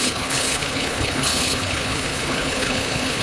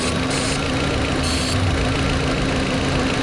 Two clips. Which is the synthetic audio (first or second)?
first